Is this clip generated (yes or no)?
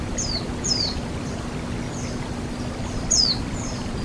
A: yes